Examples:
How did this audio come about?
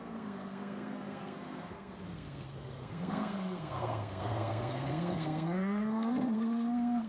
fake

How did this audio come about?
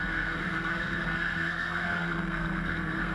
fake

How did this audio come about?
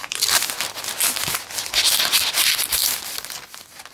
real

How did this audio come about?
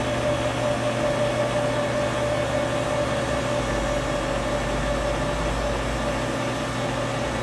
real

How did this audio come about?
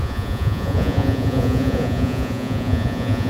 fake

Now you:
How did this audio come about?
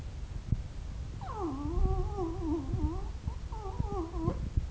real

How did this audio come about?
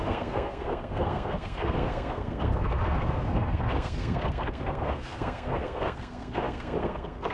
fake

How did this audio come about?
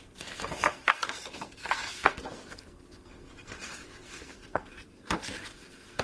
fake